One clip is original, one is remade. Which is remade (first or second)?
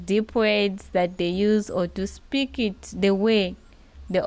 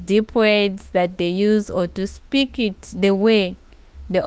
second